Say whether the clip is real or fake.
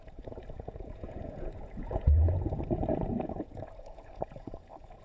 fake